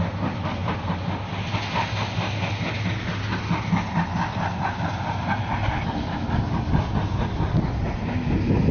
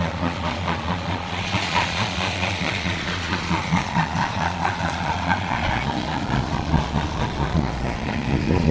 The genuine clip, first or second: first